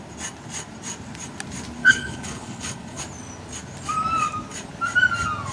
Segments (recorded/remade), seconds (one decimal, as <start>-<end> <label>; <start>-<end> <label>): 0.0-1.8 recorded; 1.8-3.0 remade; 3.0-5.5 recorded